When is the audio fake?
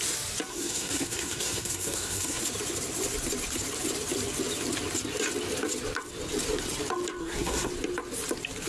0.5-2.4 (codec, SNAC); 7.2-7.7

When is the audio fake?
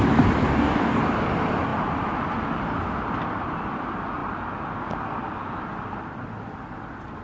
0.4-1.0 (codec, DAC)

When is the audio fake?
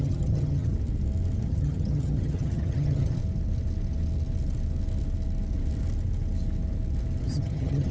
0.0-0.7 (vocoder, HiFi-GAN); 1.4-3.2; 7.2-7.9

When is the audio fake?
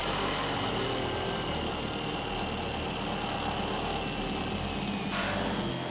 none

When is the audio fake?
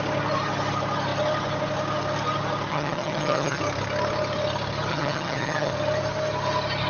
2.7-3.6 (vocoder, HiFi-GAN); 4.9-5.7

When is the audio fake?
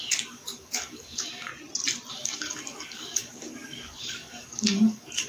0.0-1.5 (codec, DAC); 2.1-5.3